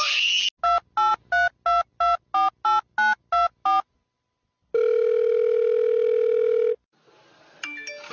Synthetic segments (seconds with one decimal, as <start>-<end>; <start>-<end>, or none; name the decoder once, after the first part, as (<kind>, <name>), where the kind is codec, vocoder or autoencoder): none